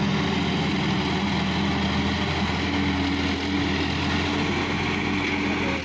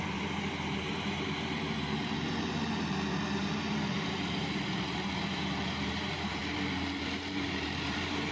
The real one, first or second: first